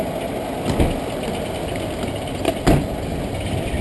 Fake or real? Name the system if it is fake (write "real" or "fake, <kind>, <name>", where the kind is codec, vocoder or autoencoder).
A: real